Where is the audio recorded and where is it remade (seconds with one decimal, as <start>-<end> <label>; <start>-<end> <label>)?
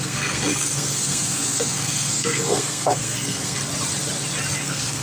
0.0-3.6 remade; 3.6-4.6 recorded; 4.6-5.0 remade